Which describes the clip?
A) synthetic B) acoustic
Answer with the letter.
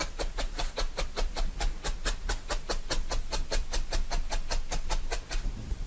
B